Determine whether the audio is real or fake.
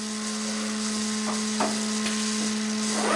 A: real